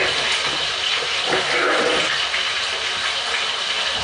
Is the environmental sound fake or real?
real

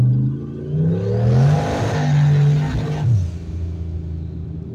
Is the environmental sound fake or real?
real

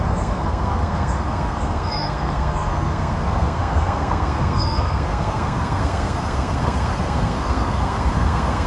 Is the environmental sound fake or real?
fake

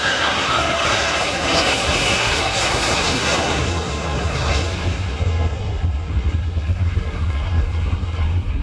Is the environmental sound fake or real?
fake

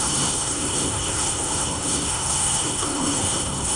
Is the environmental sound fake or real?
fake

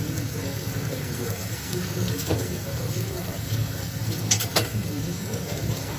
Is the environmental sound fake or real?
fake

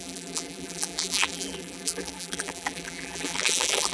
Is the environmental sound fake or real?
fake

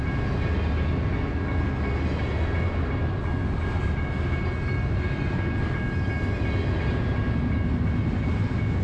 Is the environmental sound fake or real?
real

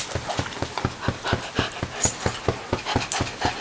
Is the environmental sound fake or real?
real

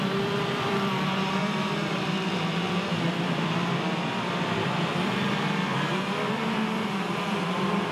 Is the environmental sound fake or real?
fake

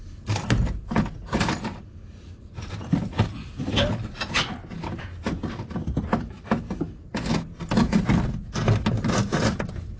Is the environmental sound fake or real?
real